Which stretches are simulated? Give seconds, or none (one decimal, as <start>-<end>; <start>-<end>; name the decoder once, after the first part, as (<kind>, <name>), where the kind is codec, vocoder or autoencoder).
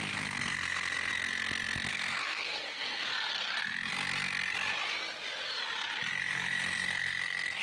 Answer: 0.0-1.1 (codec, SNAC); 1.9-3.1; 6.2-7.6